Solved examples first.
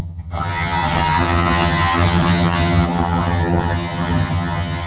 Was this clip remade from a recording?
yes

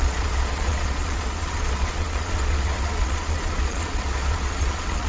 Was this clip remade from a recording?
yes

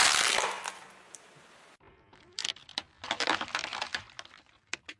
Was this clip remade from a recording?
no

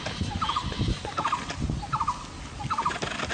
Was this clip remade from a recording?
no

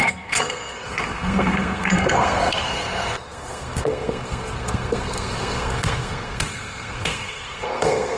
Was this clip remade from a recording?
yes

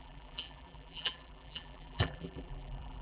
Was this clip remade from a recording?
yes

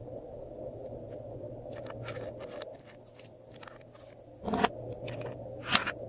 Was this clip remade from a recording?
no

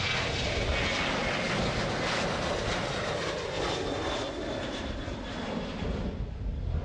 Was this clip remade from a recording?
no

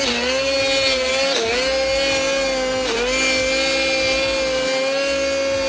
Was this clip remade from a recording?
no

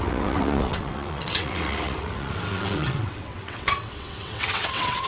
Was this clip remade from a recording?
yes